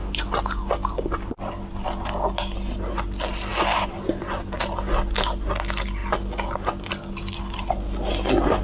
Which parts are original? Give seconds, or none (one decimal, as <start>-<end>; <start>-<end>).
0.0-8.6